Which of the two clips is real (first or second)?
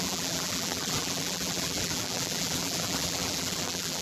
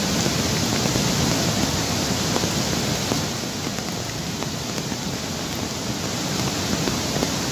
second